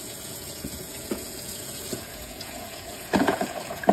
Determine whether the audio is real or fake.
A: fake